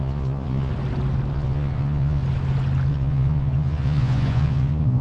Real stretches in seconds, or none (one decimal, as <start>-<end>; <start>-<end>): 0.7-1.3; 2.2-2.9